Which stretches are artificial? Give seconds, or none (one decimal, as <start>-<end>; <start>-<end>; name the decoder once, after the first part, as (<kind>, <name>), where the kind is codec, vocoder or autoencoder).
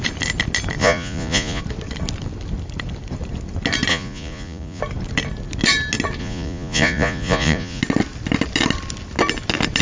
0.8-1.6 (vocoder, Vocos); 3.9-4.8; 6.2-7.8